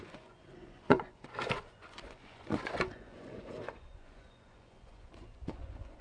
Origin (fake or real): fake